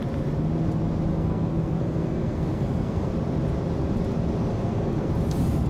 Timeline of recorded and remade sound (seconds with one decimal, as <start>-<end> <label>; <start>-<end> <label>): 0.0-1.1 recorded; 1.1-3.1 remade; 3.1-4.5 recorded; 4.5-5.1 remade; 5.1-5.7 recorded